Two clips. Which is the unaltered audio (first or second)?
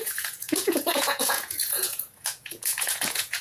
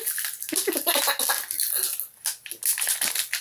second